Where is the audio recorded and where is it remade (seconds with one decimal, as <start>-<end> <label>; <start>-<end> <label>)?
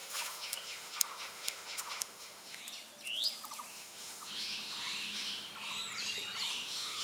0.0-2.6 remade; 2.6-3.7 recorded; 3.7-5.5 remade; 5.5-6.5 recorded; 6.5-7.0 remade